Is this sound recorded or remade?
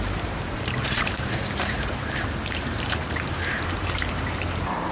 remade